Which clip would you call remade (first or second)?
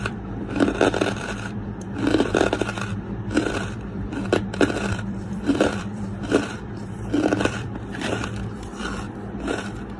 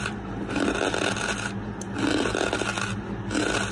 first